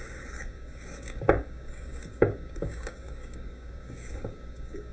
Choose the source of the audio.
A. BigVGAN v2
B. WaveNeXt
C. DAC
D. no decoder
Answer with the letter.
C